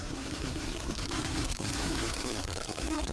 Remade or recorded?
remade